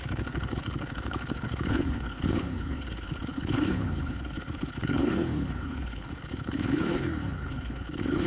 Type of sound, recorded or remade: remade